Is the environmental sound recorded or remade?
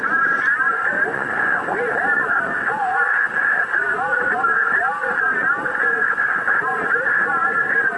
remade